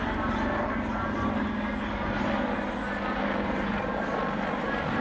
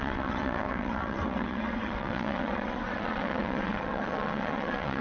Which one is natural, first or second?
first